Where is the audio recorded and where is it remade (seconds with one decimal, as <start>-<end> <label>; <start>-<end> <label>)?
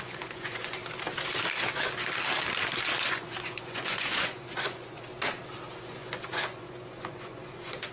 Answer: 0.0-0.8 remade; 0.8-3.0 recorded; 3.0-5.1 remade; 5.1-5.7 recorded; 5.7-7.9 remade